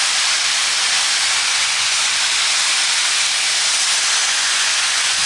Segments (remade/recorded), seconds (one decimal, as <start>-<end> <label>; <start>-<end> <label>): 0.0-1.5 recorded; 1.5-2.1 remade; 2.1-4.2 recorded; 4.2-5.3 remade